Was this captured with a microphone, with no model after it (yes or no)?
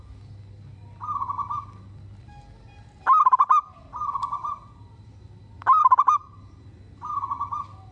yes